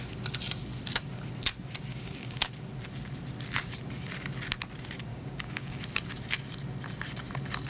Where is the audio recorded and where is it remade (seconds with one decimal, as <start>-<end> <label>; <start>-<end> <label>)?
0.0-1.9 recorded; 1.9-2.5 remade; 2.5-5.1 recorded; 5.1-5.8 remade; 5.8-7.7 recorded